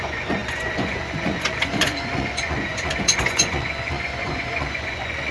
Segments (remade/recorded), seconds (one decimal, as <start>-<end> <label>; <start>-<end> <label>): 0.0-5.3 remade